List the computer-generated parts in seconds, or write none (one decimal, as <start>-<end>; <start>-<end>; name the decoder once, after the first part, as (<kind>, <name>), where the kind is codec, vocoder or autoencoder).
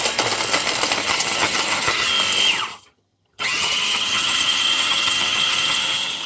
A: 1.0-2.1 (vocoder, HiFi-GAN); 2.7-6.3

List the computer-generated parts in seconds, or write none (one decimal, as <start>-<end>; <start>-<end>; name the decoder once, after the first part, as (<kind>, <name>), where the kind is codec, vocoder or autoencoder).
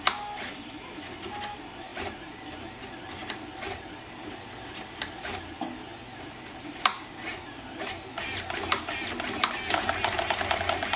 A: 1.9-2.4 (vocoder, BigVGAN v2); 5.9-6.6; 7.3-8.8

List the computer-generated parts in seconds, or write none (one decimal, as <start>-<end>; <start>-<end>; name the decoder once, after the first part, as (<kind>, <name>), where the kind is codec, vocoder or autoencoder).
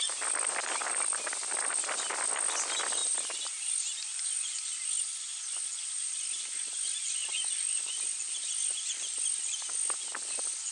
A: 3.0-3.7 (vocoder, BigVGAN v2)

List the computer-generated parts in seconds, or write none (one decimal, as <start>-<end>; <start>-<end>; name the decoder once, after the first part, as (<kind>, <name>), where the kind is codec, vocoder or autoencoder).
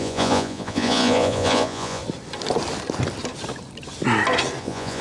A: 0.0-2.0 (vocoder, Vocos); 4.6-5.0